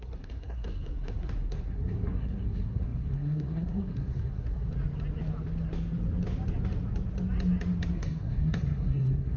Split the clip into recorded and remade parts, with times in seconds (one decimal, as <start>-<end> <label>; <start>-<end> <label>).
0.0-4.7 remade; 4.7-7.9 recorded; 7.9-9.4 remade